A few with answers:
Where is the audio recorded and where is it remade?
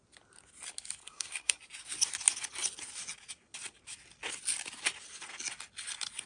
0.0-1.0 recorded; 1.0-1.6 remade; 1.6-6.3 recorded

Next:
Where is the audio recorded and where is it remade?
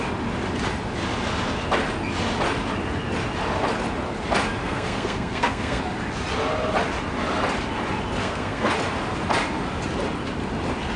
0.0-4.6 recorded; 4.6-5.8 remade; 5.8-8.2 recorded; 8.2-8.7 remade; 8.7-11.0 recorded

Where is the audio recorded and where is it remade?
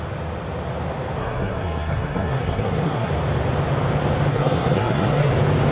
0.0-1.2 recorded; 1.2-3.1 remade; 3.1-4.3 recorded; 4.3-5.3 remade; 5.3-5.7 recorded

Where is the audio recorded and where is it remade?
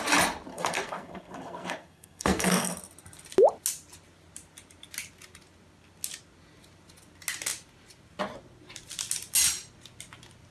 0.0-0.5 recorded; 0.5-2.7 remade; 2.7-10.5 recorded